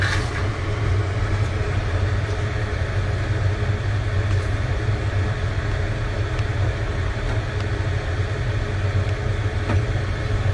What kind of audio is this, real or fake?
real